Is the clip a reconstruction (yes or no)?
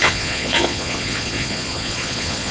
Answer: yes